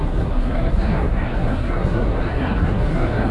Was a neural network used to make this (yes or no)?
yes